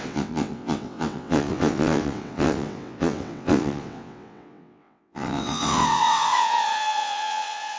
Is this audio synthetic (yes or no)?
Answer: yes